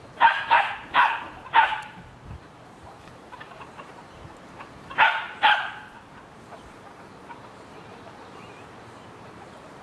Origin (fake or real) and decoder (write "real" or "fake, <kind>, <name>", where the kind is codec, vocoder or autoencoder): fake, vocoder, BigVGAN v2